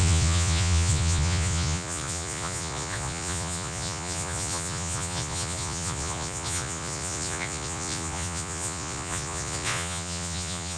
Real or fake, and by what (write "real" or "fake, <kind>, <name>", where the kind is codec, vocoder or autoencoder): fake, vocoder, Vocos